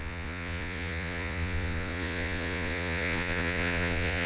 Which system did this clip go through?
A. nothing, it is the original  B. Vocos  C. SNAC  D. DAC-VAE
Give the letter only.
B